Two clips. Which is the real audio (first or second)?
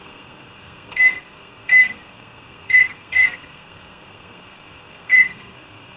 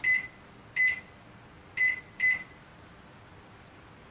second